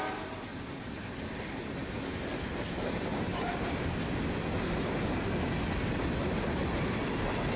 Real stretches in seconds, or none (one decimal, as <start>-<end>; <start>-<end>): 0.0-0.5; 1.0-2.3; 4.0-7.6